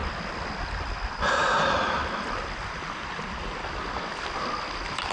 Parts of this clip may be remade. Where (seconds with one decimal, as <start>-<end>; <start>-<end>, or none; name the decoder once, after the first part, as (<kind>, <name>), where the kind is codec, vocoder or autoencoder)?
0.6-2.0 (vocoder, BigVGAN v2)